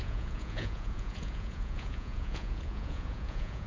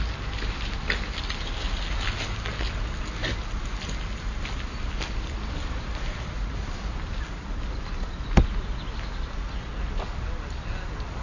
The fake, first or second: first